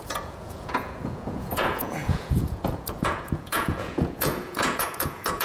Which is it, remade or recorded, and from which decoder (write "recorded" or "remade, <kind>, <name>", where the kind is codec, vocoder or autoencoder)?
remade, vocoder, Vocos